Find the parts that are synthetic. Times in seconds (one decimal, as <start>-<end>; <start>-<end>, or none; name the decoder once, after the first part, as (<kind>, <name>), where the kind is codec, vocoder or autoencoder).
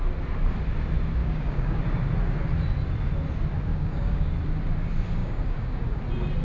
1.2-1.8 (codec, DAC); 3.7-4.3; 5.2-6.0